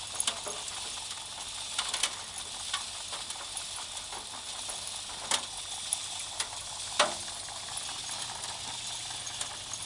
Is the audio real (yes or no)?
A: yes